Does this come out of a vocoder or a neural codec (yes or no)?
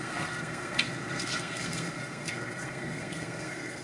yes